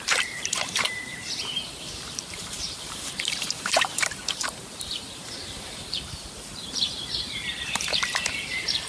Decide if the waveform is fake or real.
fake